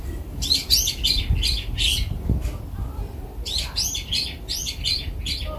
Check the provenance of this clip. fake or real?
real